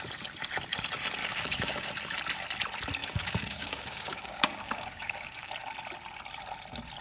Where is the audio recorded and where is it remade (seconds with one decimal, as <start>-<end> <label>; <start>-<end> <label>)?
0.0-1.2 recorded; 1.2-1.9 remade; 1.9-3.0 recorded; 3.0-5.5 remade; 5.5-7.0 recorded